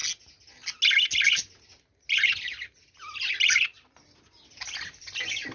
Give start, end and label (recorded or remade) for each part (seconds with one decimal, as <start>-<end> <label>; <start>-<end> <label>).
0.0-5.5 recorded